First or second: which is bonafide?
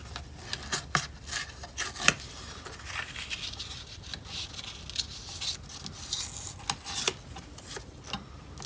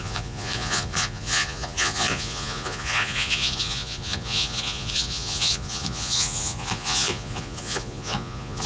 first